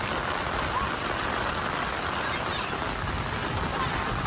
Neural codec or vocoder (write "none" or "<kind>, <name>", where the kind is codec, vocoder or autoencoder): none